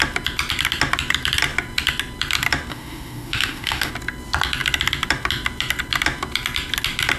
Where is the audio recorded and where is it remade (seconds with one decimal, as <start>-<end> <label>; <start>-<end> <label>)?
0.0-2.7 recorded; 2.7-3.9 remade; 3.9-7.2 recorded